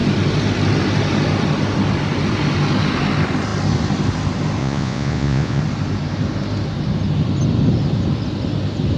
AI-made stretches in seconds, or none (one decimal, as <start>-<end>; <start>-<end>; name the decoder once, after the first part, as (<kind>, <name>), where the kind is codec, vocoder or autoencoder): 4.6-5.6 (vocoder, Vocos)